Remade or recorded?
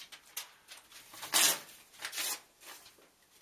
recorded